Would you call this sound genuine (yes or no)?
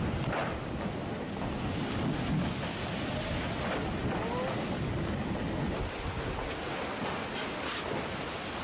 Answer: yes